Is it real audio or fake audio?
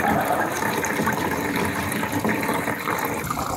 real